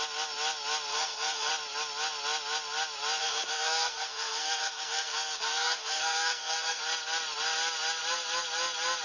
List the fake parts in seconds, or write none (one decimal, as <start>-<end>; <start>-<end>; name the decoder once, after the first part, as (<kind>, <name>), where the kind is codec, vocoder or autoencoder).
0.9-1.5 (codec, SNAC); 3.2-6.8